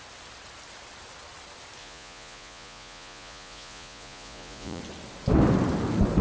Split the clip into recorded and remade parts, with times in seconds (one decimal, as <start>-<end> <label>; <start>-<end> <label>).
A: 0.0-1.8 recorded; 1.8-4.8 remade; 4.8-6.2 recorded